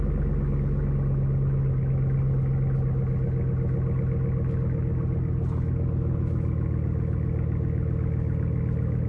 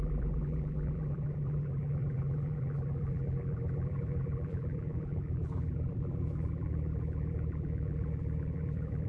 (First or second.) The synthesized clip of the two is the second